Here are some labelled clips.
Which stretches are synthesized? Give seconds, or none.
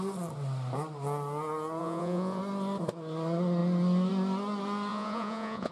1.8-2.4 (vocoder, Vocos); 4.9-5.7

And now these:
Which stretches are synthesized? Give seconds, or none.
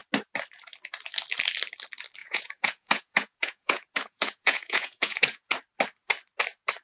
2.2-5.5 (vocoder, Vocos)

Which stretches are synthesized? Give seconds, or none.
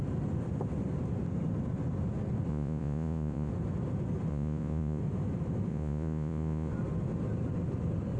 2.5-3.5 (vocoder, Vocos); 4.3-5.0; 5.7-6.7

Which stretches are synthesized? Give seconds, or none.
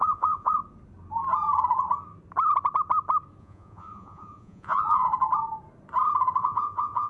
0.0-0.6 (vocoder, Vocos); 3.4-5.1; 6.4-7.1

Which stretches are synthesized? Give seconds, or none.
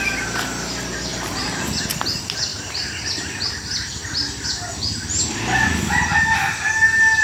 none